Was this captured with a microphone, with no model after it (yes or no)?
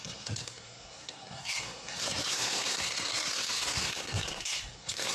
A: no